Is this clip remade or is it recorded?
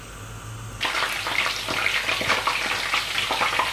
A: recorded